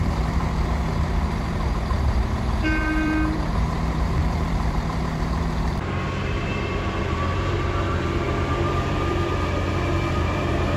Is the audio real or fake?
fake